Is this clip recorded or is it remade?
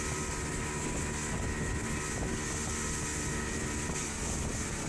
recorded